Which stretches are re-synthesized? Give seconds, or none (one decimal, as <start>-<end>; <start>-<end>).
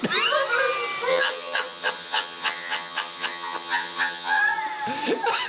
1.1-4.4